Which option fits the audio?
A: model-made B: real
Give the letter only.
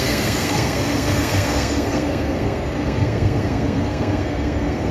A